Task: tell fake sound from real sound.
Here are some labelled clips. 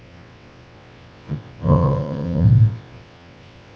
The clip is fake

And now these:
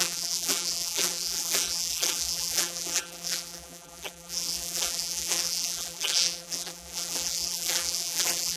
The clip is fake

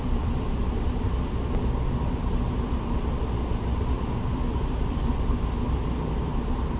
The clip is real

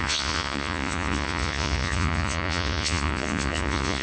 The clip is fake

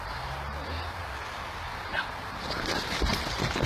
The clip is fake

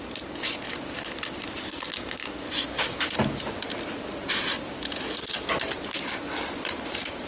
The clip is real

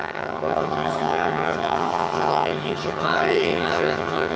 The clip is fake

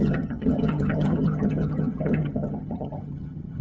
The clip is fake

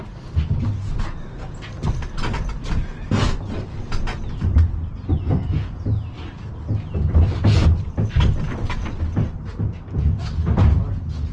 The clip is real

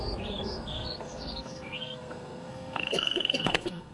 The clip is fake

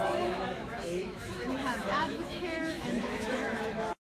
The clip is fake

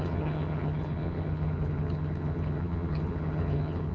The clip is fake